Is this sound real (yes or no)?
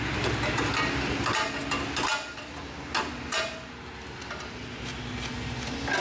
yes